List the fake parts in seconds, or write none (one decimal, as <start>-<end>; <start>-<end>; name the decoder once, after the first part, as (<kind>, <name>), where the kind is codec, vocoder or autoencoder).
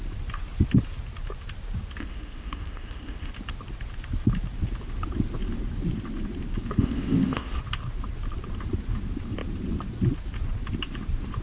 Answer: 2.0-3.3 (codec, ZipCodec); 6.8-7.6